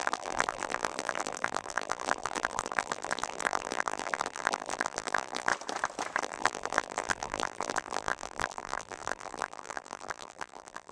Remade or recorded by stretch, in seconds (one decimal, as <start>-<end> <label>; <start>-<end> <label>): 0.0-5.5 remade; 5.5-6.2 recorded; 6.2-10.9 remade